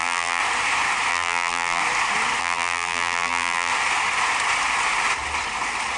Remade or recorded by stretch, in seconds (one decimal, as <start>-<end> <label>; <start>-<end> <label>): 0.0-0.4 remade; 0.4-1.1 recorded; 1.1-1.8 remade; 1.8-2.4 recorded; 2.4-3.7 remade; 3.7-6.0 recorded